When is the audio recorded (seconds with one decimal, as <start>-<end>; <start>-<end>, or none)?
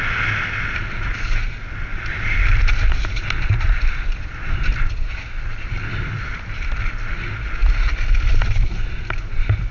0.0-1.9; 4.7-9.7